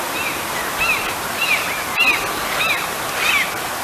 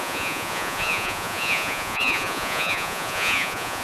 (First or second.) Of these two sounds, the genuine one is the first